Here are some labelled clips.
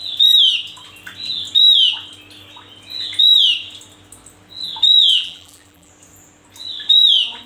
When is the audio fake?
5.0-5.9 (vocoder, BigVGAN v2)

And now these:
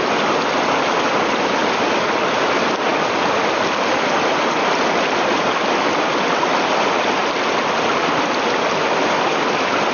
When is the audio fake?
1.6-2.4 (vocoder, BigVGAN v2)

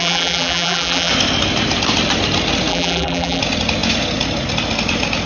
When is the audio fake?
0.0-1.1 (vocoder, BigVGAN v2); 2.7-3.4

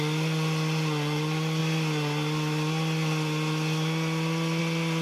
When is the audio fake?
0.0-1.6 (vocoder, BigVGAN v2); 4.6-5.0

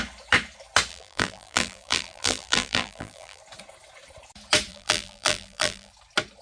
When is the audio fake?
0.9-3.4 (vocoder, BigVGAN v2); 4.7-5.9